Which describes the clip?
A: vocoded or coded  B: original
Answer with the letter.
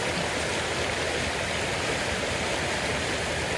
B